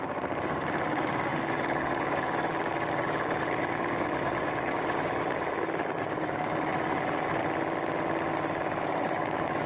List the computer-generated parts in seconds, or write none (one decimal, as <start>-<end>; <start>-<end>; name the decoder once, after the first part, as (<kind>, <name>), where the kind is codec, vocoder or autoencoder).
0.0-7.4 (codec, DAC); 8.3-9.7